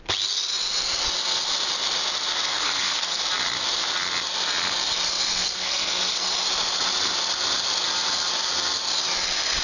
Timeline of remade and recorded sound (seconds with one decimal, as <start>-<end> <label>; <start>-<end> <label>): 0.0-2.5 recorded; 2.5-3.2 remade; 3.2-5.3 recorded; 5.3-6.3 remade; 6.3-9.6 recorded